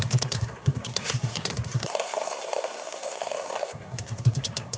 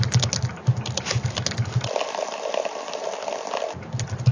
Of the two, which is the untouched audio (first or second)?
second